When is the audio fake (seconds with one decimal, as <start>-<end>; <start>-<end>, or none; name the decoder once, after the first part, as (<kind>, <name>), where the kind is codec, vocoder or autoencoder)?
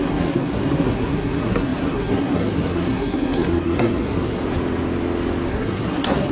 0.0-4.4 (codec, SNAC); 5.5-6.3